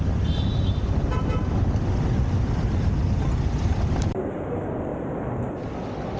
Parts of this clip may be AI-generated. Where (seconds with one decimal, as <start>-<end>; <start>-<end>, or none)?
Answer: none